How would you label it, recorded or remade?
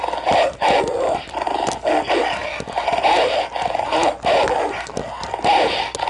recorded